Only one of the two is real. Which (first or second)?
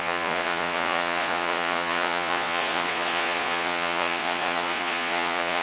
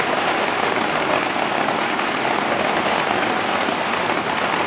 second